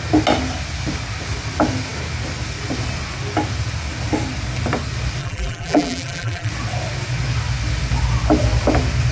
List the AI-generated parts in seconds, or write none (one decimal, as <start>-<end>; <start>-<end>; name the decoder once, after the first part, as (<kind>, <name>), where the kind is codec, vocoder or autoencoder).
5.2-6.5 (vocoder, BigVGAN v2)